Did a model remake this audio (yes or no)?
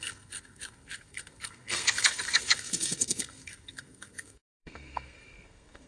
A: yes